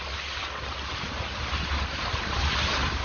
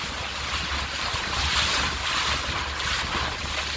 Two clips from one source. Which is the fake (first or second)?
first